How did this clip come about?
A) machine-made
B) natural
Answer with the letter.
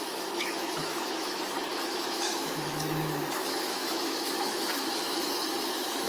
A